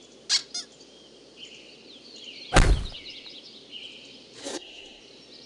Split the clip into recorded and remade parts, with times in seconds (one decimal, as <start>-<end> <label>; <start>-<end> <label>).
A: 0.0-4.4 recorded; 4.4-5.0 remade; 5.0-5.5 recorded